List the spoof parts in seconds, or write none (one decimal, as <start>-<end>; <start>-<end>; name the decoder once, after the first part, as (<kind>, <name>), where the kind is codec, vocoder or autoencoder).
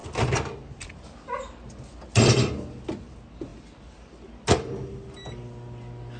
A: none